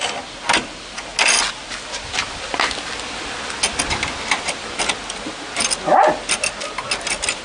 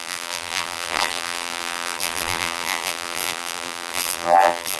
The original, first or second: first